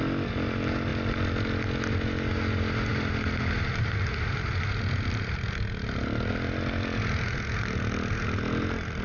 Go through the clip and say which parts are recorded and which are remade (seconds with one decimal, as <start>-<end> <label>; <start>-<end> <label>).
0.0-9.0 recorded